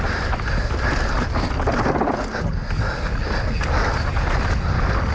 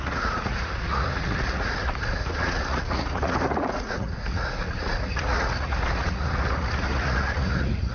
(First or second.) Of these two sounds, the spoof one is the second